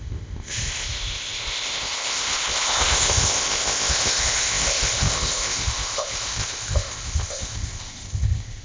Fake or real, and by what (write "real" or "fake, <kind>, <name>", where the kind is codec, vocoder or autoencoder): fake, codec, ZipCodec